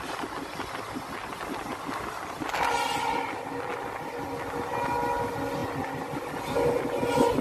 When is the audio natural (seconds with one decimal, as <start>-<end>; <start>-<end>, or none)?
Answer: 0.0-7.4